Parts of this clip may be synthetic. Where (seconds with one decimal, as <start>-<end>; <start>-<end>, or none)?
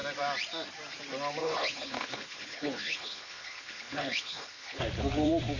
1.4-4.8